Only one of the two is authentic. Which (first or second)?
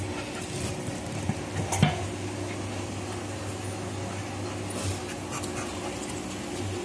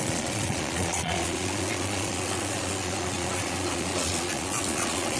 first